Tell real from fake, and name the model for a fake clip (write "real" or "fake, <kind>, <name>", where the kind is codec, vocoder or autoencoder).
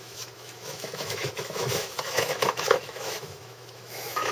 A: fake, autoencoder, DAC-VAE